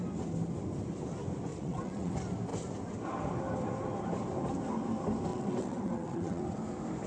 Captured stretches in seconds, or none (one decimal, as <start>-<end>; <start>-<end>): 0.0-1.5; 2.1-5.3; 6.4-7.1

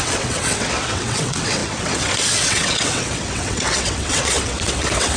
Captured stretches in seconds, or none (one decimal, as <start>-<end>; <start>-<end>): none